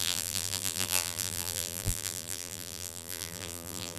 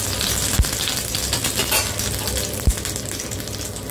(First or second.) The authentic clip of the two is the second